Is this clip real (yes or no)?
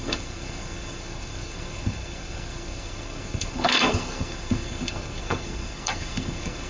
no